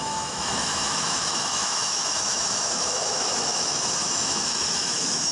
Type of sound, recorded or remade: remade